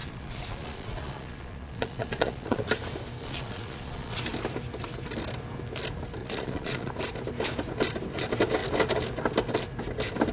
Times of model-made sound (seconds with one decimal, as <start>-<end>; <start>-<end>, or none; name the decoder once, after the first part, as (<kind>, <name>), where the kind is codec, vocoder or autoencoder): 0.0-2.7 (vocoder, Vocos); 3.2-4.2; 6.2-6.9